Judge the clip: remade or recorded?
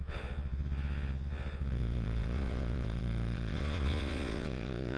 remade